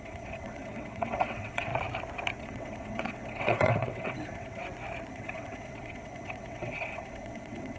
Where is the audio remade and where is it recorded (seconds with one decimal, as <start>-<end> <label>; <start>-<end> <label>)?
0.0-1.7 remade; 1.7-2.4 recorded; 2.4-4.6 remade; 4.6-5.1 recorded; 5.1-7.8 remade

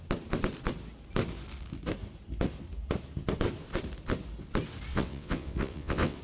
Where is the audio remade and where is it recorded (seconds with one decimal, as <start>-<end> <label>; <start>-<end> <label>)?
0.0-4.9 recorded; 4.9-6.2 remade